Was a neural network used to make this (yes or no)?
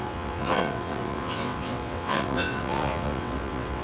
yes